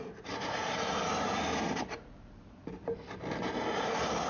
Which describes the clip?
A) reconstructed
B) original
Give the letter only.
A